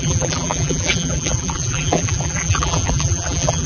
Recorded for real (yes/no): no